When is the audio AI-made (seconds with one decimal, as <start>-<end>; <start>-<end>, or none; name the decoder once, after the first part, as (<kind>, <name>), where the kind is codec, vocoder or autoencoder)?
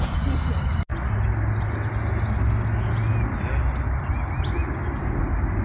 none